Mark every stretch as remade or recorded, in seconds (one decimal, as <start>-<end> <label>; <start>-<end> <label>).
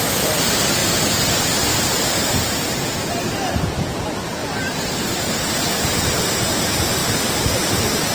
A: 0.0-4.4 recorded; 4.4-6.5 remade; 6.5-7.0 recorded; 7.0-8.1 remade